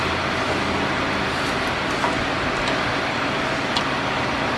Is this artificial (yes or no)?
no